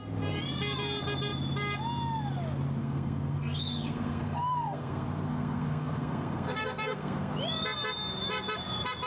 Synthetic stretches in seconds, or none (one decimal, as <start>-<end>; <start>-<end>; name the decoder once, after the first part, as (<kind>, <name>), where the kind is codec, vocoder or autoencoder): 2.8-7.3 (codec, SNAC)